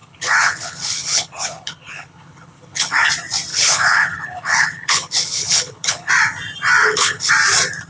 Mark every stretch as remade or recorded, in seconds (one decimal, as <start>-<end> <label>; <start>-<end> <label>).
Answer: 0.0-3.1 remade; 3.1-3.5 recorded; 3.5-6.1 remade; 6.1-6.8 recorded; 6.8-7.3 remade; 7.3-7.9 recorded